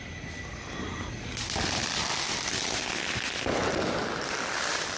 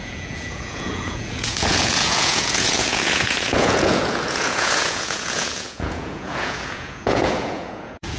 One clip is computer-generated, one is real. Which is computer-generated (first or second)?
second